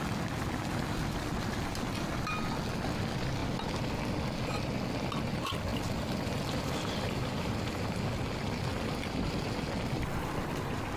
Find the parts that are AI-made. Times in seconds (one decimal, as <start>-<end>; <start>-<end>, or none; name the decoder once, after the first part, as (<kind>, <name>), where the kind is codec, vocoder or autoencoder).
8.7-10.1 (vocoder, BigVGAN v2)